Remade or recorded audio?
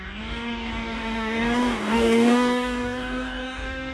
remade